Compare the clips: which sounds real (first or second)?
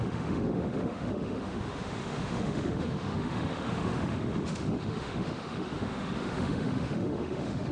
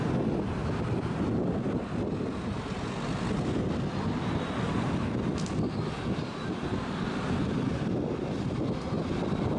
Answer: second